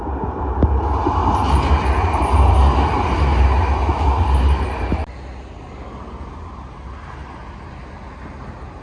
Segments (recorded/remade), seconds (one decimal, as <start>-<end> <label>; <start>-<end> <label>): 0.0-8.8 recorded

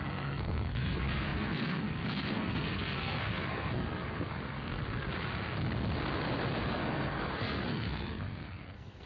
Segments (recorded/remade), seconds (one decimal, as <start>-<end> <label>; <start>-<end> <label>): 0.0-4.8 remade; 4.8-6.6 recorded; 6.6-9.1 remade

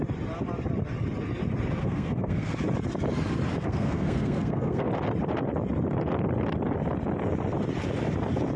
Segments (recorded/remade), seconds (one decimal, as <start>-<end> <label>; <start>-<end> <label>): 0.0-1.8 recorded; 1.8-2.5 remade; 2.5-3.6 recorded; 3.6-4.9 remade; 4.9-8.6 recorded

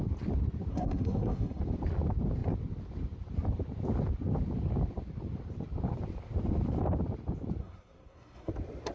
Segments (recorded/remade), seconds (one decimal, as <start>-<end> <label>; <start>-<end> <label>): 0.0-0.7 recorded; 0.7-1.6 remade; 1.6-7.6 recorded; 7.6-8.5 remade; 8.5-8.9 recorded

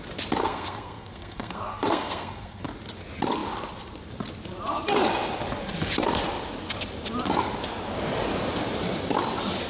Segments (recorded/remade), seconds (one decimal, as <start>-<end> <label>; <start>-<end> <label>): 0.0-0.4 recorded; 0.4-2.6 remade; 2.6-9.7 recorded

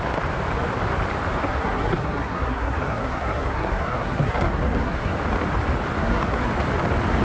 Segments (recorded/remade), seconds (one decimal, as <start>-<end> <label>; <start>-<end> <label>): 0.0-1.4 recorded; 1.4-5.2 remade; 5.2-6.0 recorded; 6.0-6.5 remade; 6.5-7.2 recorded

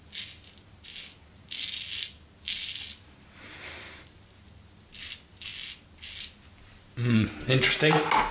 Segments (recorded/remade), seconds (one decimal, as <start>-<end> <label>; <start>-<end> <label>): 0.0-8.3 recorded